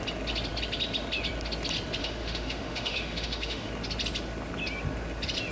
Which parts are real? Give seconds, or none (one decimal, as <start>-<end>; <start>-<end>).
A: 0.0-2.0; 3.7-5.5